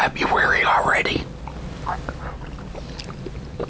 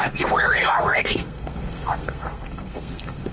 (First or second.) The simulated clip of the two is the second